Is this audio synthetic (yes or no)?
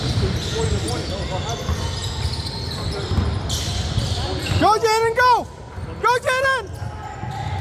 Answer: no